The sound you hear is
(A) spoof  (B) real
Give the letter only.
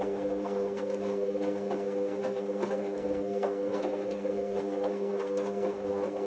A